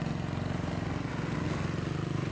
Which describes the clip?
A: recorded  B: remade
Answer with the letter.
A